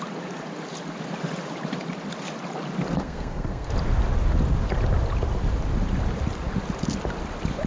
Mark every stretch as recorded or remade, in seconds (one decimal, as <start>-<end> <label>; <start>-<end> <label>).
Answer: 0.0-3.0 recorded; 3.0-3.7 remade; 3.7-7.7 recorded